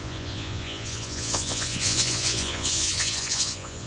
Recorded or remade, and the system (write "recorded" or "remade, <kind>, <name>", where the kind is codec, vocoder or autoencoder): remade, vocoder, Vocos